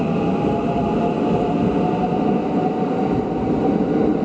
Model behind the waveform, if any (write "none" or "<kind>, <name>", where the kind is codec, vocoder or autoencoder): none